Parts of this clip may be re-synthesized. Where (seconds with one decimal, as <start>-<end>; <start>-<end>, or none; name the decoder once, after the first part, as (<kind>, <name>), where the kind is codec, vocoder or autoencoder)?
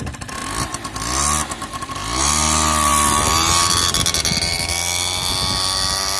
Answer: none